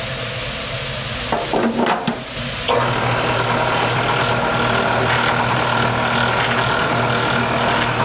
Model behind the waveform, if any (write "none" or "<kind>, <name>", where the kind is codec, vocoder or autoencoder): none